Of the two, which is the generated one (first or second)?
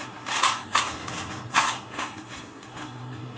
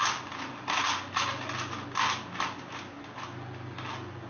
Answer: first